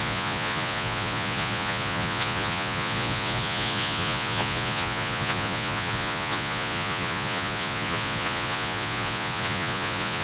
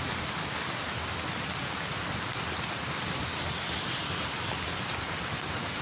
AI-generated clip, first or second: first